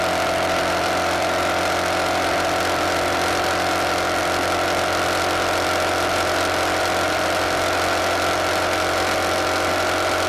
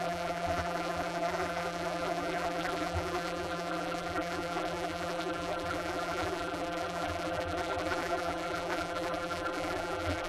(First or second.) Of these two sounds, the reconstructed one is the second